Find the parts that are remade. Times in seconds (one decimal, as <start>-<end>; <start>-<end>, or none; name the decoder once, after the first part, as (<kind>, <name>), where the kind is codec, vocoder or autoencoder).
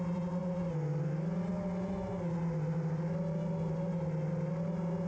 none